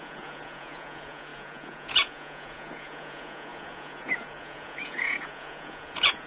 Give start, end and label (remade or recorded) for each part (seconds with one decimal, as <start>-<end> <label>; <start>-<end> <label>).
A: 0.0-6.3 remade